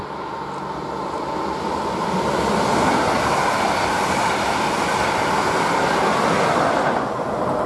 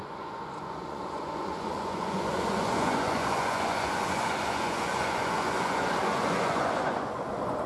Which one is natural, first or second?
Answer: first